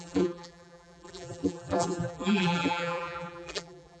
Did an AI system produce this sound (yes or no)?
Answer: yes